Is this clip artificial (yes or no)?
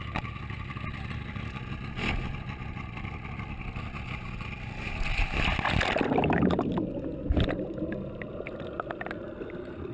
no